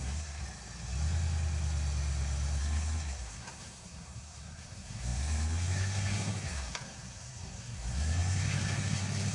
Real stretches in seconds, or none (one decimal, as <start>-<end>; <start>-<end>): 0.4-2.6